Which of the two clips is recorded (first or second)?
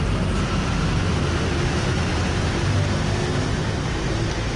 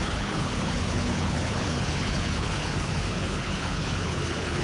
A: first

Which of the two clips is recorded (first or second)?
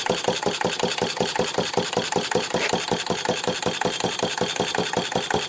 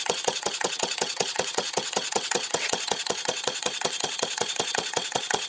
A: first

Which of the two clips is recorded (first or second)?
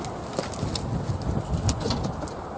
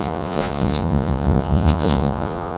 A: first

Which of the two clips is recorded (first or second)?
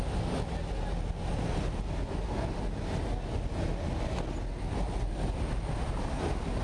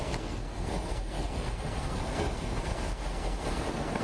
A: first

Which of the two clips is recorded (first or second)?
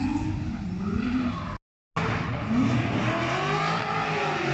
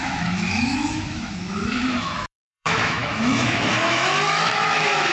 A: first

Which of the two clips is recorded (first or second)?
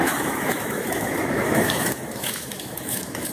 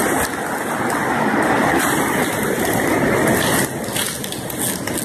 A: second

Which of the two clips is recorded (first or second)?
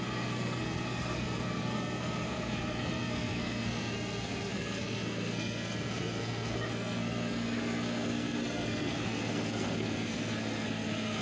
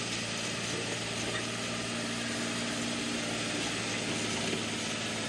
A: second